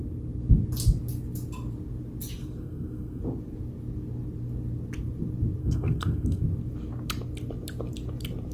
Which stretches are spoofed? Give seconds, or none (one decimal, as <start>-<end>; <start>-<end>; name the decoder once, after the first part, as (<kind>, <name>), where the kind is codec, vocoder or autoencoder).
2.4-3.2 (codec, SNAC); 5.6-6.4